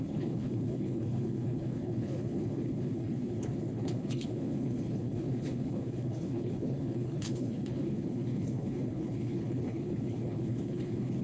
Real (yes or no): no